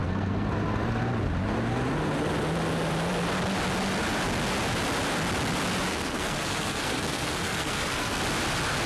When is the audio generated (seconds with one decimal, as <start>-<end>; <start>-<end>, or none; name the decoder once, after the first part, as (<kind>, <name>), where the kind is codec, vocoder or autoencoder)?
0.0-0.5 (codec, SNAC); 5.9-8.2